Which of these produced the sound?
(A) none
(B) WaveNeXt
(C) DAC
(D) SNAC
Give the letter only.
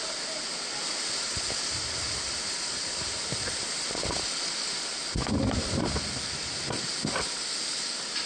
A